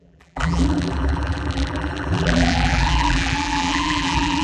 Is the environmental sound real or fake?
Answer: fake